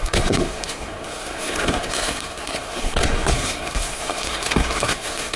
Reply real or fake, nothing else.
fake